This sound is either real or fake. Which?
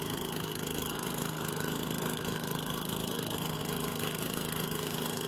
fake